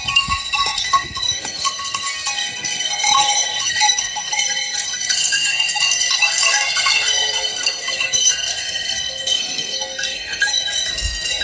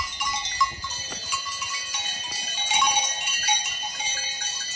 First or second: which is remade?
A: first